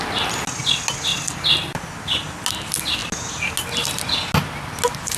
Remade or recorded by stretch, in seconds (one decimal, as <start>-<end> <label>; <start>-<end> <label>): 0.0-5.2 recorded